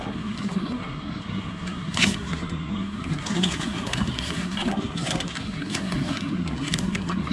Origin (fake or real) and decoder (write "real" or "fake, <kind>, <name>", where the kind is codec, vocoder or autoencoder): fake, codec, SNAC